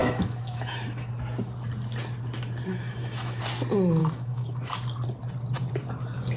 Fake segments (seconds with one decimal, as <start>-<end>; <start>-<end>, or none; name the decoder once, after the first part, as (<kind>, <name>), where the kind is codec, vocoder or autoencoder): 0.0-1.1 (autoencoder, DAC-VAE); 2.7-3.4; 4.0-4.6